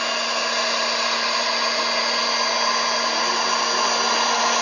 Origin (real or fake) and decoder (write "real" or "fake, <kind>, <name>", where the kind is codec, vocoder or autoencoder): real